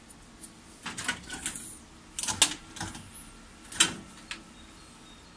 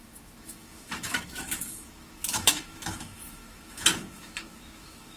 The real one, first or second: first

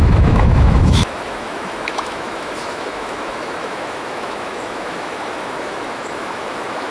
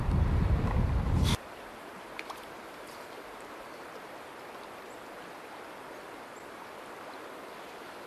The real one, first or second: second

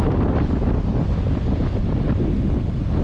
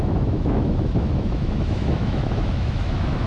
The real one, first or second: first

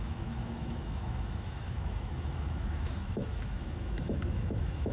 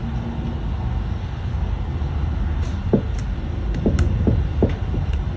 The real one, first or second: second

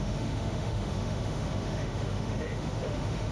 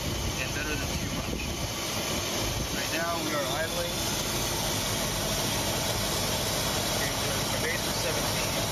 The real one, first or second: second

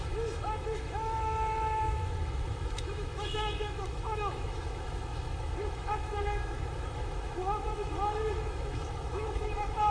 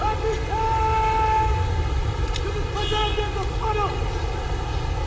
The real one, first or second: second